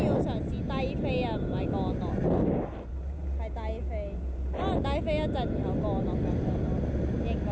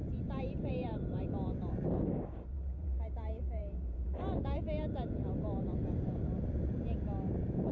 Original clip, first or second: first